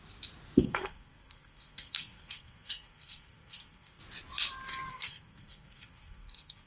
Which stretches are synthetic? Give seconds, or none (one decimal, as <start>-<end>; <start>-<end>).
0.6-4.0; 4.9-6.7